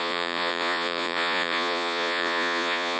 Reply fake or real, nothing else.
fake